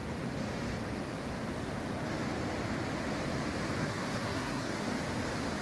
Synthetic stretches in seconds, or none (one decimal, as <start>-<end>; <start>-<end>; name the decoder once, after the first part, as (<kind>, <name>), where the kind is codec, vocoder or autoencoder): 3.8-4.9 (codec, SNAC)